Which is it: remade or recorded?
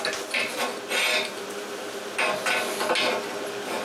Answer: recorded